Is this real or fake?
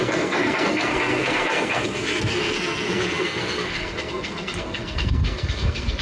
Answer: fake